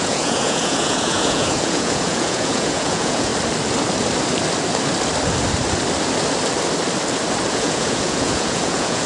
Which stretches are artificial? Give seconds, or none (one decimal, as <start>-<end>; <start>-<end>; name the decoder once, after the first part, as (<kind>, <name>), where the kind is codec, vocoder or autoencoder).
0.0-3.3 (vocoder, Vocos); 7.5-9.1